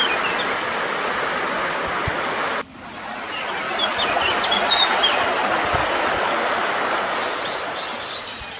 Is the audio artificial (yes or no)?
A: no